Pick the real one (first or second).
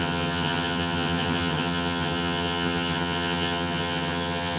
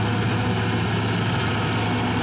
second